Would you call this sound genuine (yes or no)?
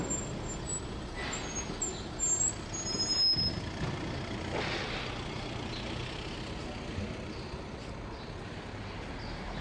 yes